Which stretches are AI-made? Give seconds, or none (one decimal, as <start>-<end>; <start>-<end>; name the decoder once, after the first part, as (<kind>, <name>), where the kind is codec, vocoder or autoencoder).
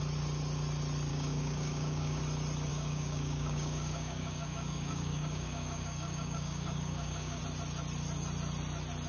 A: 1.1-2.2 (codec, DAC); 2.7-7.4